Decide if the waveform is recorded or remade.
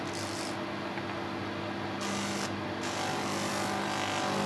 recorded